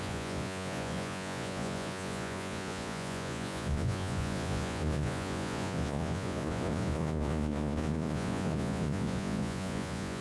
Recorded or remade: remade